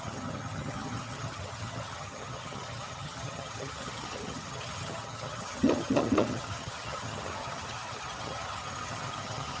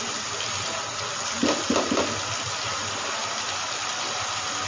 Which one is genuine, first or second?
second